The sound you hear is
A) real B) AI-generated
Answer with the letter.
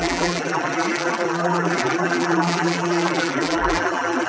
B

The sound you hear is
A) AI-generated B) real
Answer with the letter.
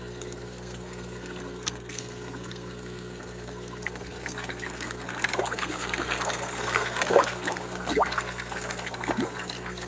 A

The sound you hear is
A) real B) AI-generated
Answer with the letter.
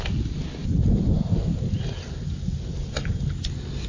A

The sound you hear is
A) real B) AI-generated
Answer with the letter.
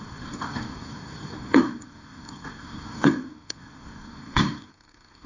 B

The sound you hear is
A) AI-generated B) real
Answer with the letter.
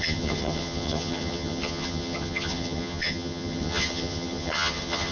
A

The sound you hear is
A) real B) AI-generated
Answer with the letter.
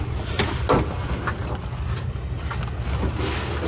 A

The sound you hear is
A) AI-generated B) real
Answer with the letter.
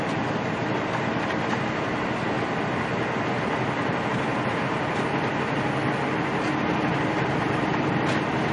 B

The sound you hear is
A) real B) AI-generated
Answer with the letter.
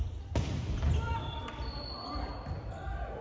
A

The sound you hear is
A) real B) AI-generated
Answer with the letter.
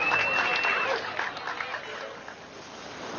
A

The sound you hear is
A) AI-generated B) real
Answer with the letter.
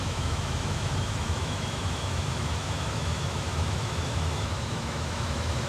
A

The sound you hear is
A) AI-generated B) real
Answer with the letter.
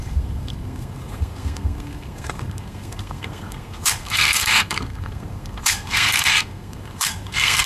A